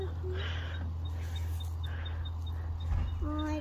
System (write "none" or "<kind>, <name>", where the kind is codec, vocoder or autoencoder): none